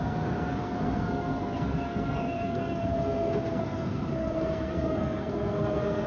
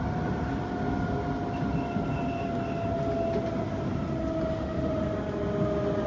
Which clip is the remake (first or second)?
first